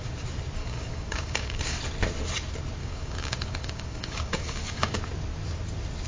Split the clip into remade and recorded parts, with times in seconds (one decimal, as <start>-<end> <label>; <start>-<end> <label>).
0.0-0.6 recorded; 0.6-1.8 remade; 1.8-2.8 recorded; 2.8-5.0 remade; 5.0-6.1 recorded